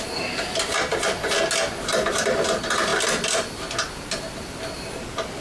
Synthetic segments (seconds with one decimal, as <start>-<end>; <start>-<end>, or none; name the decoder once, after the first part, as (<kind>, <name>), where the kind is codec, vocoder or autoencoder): none